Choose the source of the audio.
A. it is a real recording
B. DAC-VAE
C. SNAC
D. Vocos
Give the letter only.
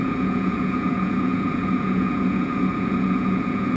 D